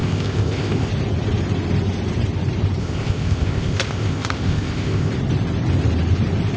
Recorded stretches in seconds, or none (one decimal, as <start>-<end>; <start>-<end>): 0.9-2.8; 5.1-6.6